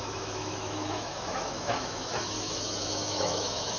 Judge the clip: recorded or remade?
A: remade